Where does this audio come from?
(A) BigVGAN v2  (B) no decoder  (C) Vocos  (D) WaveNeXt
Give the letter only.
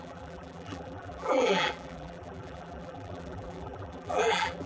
A